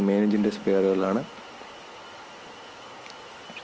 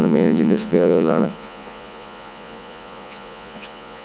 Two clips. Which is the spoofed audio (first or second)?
second